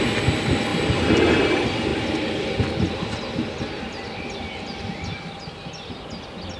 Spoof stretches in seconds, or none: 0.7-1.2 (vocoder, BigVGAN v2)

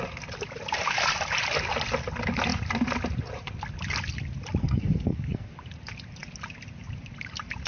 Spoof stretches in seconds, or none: 4.6-5.5 (codec, SNAC)

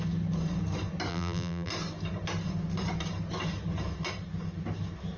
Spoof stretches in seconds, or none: 1.1-1.7 (vocoder, BigVGAN v2)

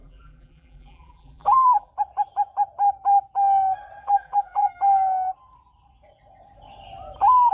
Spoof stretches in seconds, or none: 0.0-1.9 (vocoder, BigVGAN v2); 4.0-4.7

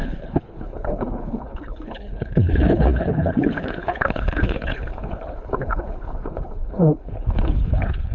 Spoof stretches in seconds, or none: 0.0-8.1 (codec, HILCodec)

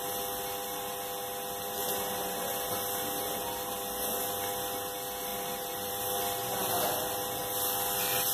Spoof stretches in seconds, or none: none

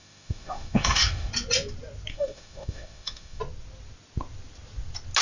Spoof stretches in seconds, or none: 0.0-1.3 (autoencoder, DAC-VAE); 2.1-3.4

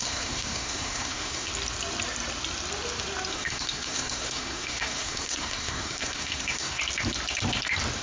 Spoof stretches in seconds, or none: 0.0-1.5 (codec, SNAC); 3.3-6.8